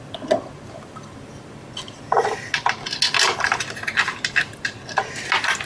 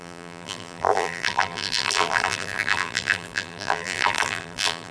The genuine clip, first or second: first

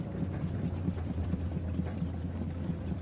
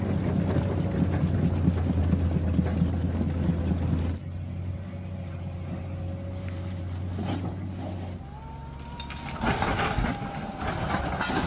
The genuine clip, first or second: second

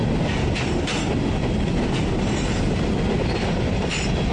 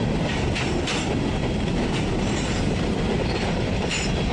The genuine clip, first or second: first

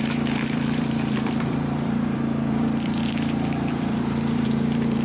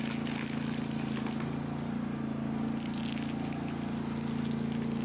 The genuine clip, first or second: second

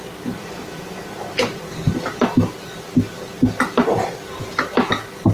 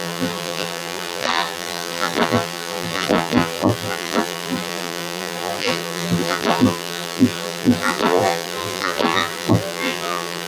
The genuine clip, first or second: first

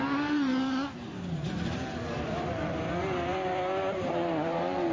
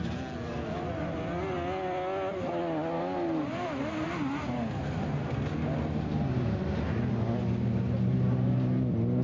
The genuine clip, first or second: second